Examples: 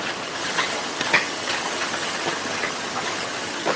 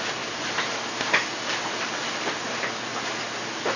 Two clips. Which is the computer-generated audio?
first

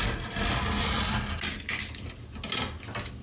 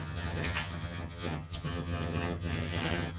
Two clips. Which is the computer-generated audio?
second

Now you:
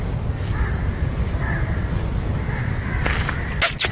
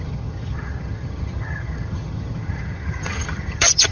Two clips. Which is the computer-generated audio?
second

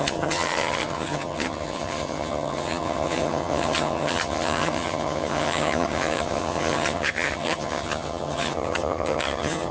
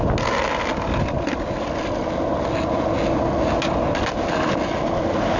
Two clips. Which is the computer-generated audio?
first